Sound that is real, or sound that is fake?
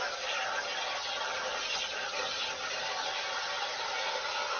real